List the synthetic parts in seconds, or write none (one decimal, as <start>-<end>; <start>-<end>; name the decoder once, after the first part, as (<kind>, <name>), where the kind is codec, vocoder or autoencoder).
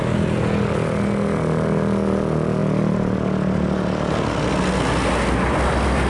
none